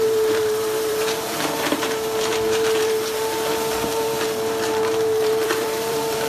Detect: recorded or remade remade